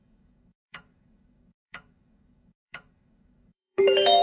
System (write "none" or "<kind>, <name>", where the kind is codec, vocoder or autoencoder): codec, DAC